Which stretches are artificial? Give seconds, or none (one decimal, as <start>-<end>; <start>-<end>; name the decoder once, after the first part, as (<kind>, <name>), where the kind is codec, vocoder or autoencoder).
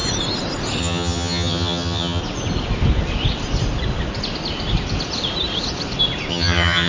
0.8-2.2 (vocoder, HiFi-GAN); 6.3-6.9